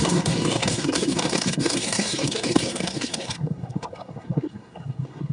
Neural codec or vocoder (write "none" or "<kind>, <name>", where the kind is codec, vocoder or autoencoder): codec, SNAC